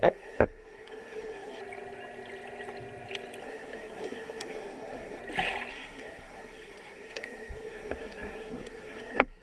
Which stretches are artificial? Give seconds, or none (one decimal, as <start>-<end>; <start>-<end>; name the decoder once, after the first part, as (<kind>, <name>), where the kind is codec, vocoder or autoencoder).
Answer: 0.0-1.6 (codec, SNAC); 3.4-5.2; 5.7-9.4